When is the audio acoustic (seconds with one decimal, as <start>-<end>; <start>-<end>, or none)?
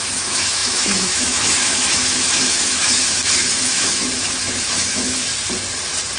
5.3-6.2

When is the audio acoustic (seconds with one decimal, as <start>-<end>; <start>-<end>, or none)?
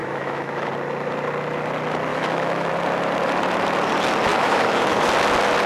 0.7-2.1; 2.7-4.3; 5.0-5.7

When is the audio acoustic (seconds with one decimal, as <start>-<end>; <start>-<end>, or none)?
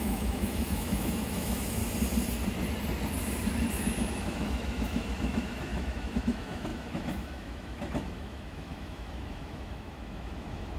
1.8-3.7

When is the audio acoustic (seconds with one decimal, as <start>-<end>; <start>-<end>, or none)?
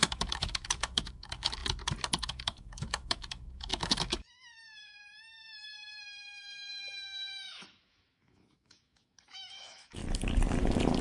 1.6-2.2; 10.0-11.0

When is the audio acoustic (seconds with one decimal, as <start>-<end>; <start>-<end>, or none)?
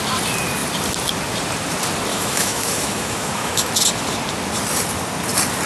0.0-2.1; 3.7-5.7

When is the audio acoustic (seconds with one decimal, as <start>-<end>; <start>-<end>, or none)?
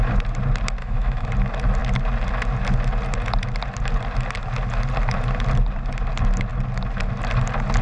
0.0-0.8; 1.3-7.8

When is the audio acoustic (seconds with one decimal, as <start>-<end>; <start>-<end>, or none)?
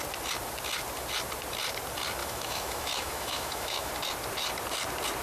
0.0-2.2; 3.9-5.2